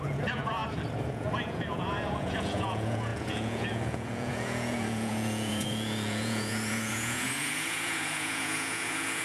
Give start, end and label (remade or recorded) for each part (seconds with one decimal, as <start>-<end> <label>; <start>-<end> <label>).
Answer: 0.0-0.6 remade; 0.6-1.1 recorded; 1.1-9.2 remade